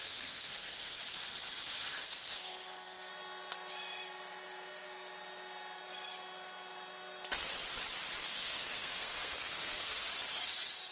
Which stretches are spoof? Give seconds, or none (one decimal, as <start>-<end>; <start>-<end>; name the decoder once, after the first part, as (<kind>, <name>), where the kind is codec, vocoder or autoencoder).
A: 0.0-1.0 (codec, SNAC); 2.0-3.1; 8.2-10.0